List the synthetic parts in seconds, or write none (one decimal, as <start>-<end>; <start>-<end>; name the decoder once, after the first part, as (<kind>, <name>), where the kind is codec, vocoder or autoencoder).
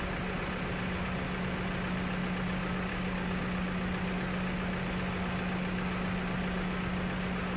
2.9-3.4 (codec, DAC)